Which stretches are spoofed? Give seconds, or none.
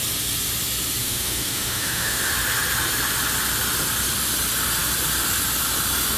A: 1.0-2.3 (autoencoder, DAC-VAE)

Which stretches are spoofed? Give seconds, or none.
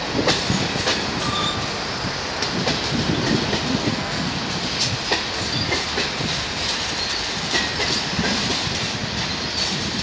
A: 3.8-4.4 (codec, SNAC)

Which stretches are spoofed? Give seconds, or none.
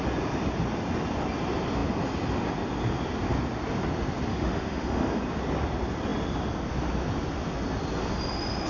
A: 4.3-5.2 (autoencoder, DAC-VAE)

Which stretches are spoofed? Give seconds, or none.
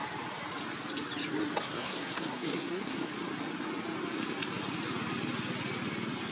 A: 1.6-3.1 (codec, SNAC)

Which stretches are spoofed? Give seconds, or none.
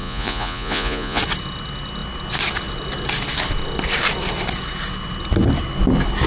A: 0.0-1.2 (vocoder, Vocos)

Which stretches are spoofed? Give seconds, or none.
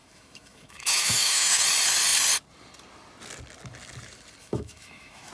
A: 0.0-1.6 (autoencoder, DAC-VAE); 4.4-5.3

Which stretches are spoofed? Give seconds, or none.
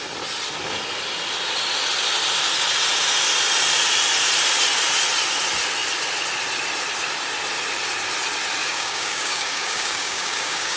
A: 8.6-10.8 (codec, DAC)